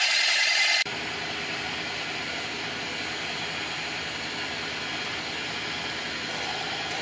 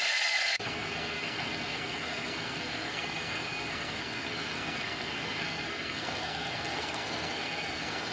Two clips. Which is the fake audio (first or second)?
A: second